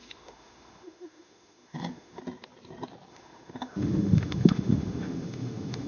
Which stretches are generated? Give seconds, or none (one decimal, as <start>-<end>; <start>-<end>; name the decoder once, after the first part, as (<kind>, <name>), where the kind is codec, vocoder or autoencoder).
0.0-2.2 (autoencoder, DAC-VAE); 3.1-5.9